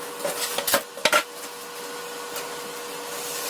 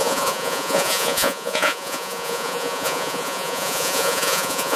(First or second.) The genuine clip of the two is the first